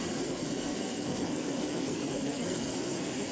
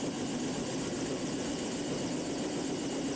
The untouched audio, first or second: second